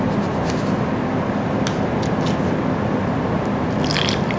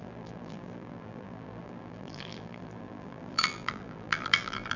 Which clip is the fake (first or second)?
second